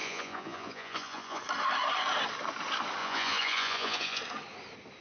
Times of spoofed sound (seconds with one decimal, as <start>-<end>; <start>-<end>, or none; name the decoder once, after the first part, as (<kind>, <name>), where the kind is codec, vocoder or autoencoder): 0.0-1.4 (vocoder, Vocos); 3.0-4.2